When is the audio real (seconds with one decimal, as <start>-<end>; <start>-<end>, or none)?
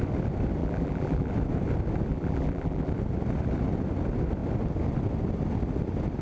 0.0-0.6; 1.3-2.1; 2.9-6.2